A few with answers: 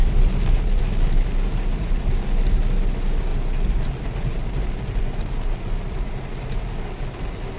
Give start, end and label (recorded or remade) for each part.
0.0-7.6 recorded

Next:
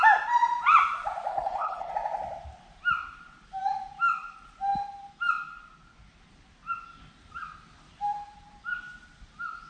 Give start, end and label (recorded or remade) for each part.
0.0-1.3 recorded; 1.3-1.9 remade; 1.9-9.7 recorded

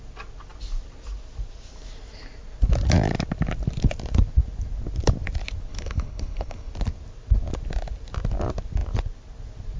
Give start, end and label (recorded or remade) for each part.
0.0-5.7 recorded; 5.7-6.7 remade; 6.7-9.8 recorded

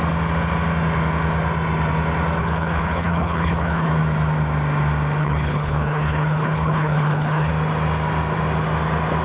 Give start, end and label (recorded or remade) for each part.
0.0-2.4 recorded; 2.4-3.9 remade; 3.9-5.2 recorded; 5.2-7.5 remade; 7.5-9.2 recorded

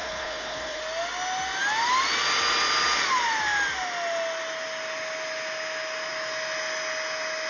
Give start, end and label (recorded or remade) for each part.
0.0-0.8 remade; 0.8-7.5 recorded

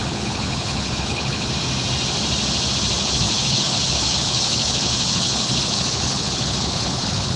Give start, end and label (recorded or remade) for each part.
0.0-1.5 remade; 1.5-3.0 recorded; 3.0-7.4 remade